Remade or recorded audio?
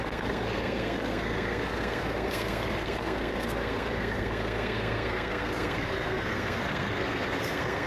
remade